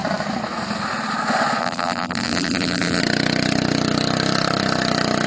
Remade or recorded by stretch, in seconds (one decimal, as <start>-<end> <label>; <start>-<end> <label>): 0.0-1.6 recorded; 1.6-3.0 remade; 3.0-5.3 recorded